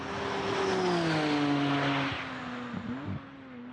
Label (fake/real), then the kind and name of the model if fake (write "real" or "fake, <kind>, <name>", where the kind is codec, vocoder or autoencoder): real